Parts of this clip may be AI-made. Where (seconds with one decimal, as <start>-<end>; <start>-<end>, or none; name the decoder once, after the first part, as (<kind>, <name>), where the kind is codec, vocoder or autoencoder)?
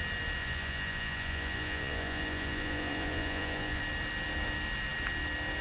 0.4-3.8 (vocoder, Vocos)